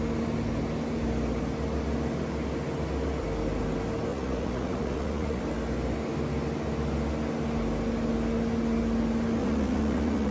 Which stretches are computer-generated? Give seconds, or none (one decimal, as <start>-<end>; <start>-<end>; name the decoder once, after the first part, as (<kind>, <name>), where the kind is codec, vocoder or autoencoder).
4.1-5.4 (vocoder, Vocos); 9.4-10.3